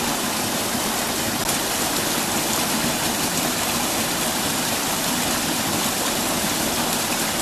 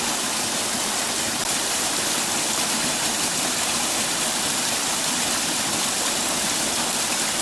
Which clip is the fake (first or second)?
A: second